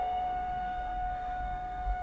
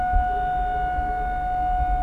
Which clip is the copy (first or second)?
first